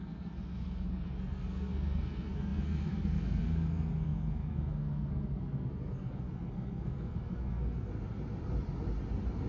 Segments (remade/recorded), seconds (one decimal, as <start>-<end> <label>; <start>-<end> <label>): 0.0-7.9 remade; 7.9-9.5 recorded